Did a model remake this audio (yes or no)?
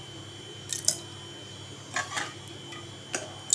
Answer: no